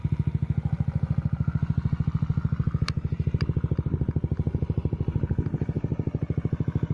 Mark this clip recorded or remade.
recorded